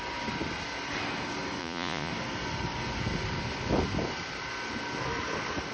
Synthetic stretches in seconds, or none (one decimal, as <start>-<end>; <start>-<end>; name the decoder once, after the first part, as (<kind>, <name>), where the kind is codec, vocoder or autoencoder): 1.6-2.1 (vocoder, Vocos)